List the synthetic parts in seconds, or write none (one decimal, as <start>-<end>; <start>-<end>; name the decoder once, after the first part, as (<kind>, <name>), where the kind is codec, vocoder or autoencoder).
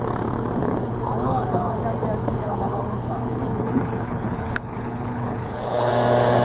0.6-1.8 (codec, HILCodec); 2.2-5.9